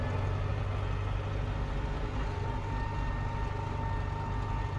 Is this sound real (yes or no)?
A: yes